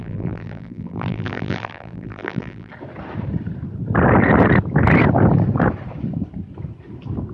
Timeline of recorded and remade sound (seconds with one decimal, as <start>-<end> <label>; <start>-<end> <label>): 0.0-2.7 remade; 2.7-7.3 recorded